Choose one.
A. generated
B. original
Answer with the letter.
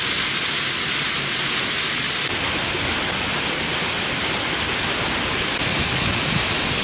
B